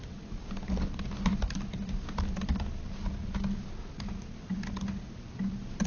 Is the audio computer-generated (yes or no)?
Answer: no